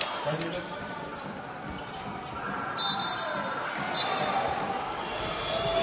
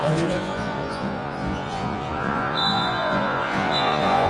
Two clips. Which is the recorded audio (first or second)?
first